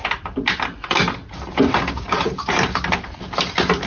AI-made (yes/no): no